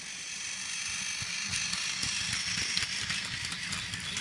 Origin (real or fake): real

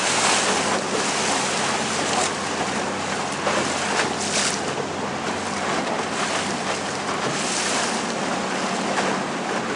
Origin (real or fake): real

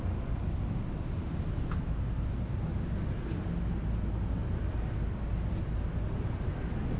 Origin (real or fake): real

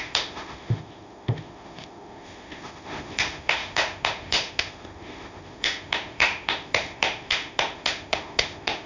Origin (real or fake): fake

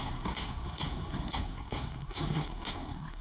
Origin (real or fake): fake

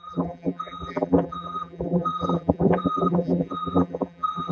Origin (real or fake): fake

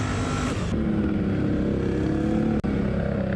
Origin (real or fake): real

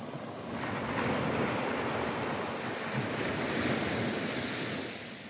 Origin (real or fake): real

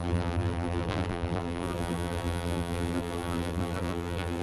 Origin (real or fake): fake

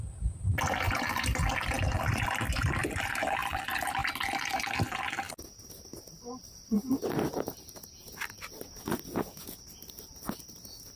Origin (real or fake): real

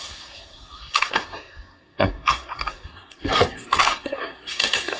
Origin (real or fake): fake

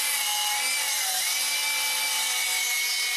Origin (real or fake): real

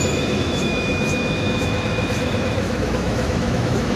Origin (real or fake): fake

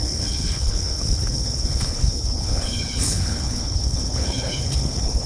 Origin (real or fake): fake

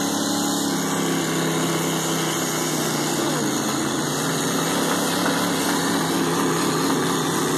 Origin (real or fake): real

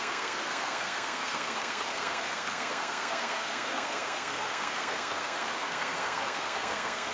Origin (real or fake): fake